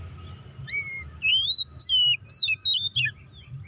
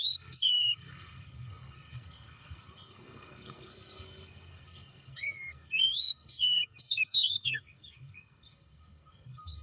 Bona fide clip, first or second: first